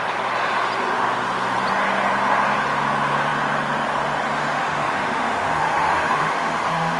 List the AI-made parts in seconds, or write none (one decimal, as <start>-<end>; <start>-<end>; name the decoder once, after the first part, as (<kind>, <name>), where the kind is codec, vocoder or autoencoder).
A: 4.4-7.0 (autoencoder, DAC-VAE)